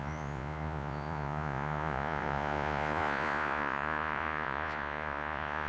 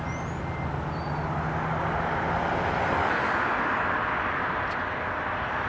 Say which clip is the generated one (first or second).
first